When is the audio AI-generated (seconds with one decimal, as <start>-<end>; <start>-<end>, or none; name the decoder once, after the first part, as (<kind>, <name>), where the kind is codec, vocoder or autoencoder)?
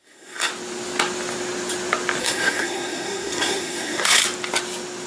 0.0-0.5 (codec, SNAC); 2.2-4.2